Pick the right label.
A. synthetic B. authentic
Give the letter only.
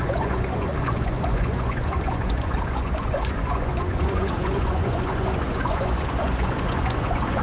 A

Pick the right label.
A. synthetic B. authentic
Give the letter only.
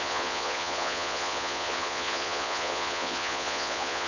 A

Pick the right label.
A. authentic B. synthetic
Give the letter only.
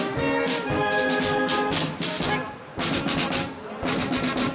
A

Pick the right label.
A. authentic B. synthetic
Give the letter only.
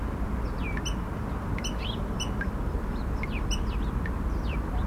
A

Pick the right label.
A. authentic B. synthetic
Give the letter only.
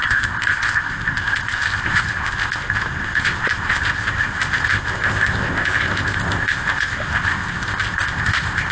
B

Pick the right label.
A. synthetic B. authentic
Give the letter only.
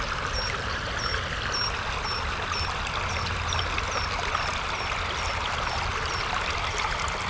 B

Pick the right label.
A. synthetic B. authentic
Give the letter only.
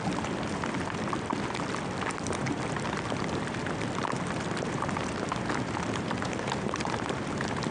A